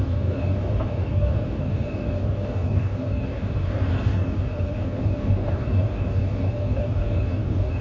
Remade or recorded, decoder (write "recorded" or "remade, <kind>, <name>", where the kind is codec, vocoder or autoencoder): remade, codec, DAC